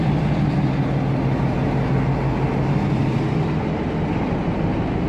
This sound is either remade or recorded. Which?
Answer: recorded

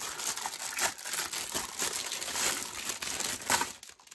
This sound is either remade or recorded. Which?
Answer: recorded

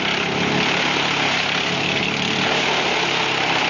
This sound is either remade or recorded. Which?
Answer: recorded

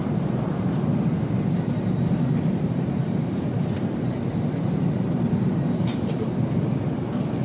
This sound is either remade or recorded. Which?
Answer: remade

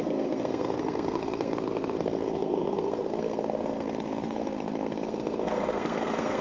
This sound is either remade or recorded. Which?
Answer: remade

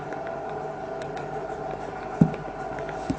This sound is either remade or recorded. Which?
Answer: remade